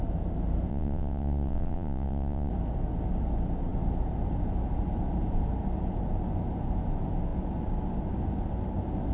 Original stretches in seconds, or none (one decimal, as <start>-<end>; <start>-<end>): 0.0-0.7; 2.5-9.1